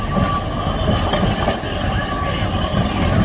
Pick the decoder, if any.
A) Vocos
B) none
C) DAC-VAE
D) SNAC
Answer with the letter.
B